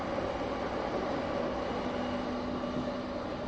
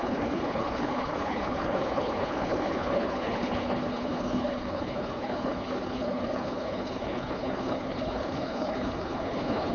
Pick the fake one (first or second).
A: second